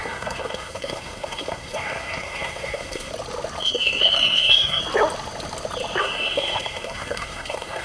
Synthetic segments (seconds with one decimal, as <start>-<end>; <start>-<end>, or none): 0.0-3.1; 3.6-4.8; 6.0-7.8

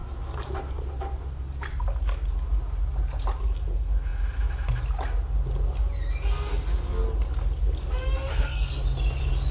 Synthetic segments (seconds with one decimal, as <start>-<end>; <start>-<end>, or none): 8.3-8.8

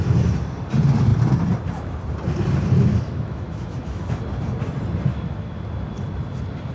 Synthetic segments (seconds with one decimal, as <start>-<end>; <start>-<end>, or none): 2.9-4.1; 5.1-5.6

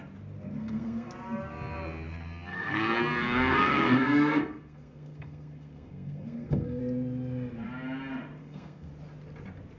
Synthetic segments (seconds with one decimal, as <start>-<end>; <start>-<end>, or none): 0.6-1.1; 2.5-6.8; 8.4-8.9

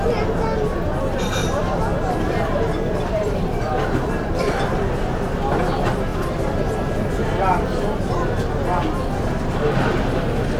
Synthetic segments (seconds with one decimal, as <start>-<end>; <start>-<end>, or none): 1.4-4.8; 6.1-8.1

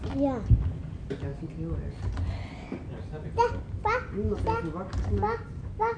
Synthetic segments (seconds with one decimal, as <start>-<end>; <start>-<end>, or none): none